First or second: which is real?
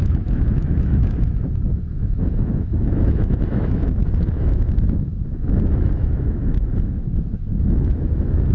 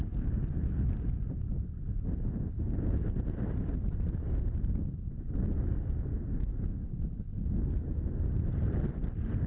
second